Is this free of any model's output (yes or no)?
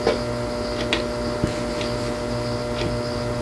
yes